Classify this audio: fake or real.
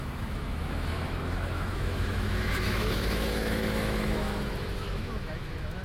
fake